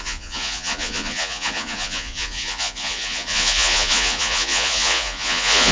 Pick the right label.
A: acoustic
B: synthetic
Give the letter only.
B